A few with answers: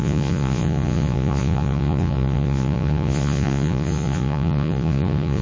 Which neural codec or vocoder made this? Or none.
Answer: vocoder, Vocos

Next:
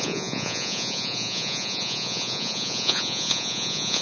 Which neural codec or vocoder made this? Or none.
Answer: vocoder, Vocos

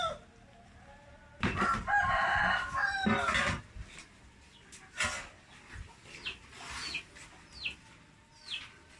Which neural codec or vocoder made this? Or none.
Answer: none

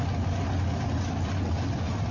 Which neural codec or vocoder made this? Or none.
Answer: none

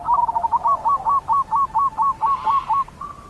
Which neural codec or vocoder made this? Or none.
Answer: none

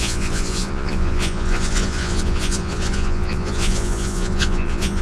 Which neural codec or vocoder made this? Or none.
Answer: vocoder, Vocos